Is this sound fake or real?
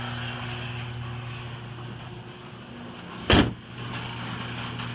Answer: real